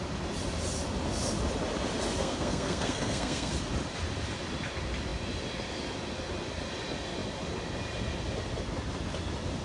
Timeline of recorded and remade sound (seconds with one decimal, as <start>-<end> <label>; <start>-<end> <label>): 0.0-2.2 recorded; 2.2-3.5 remade; 3.5-9.6 recorded